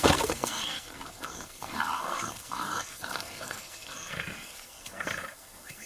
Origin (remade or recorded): remade